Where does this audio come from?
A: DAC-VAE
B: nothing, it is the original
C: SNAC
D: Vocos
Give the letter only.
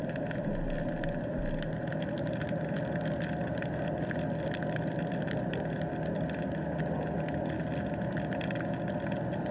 B